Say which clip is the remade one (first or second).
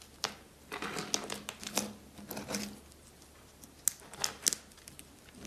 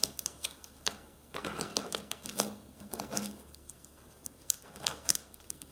second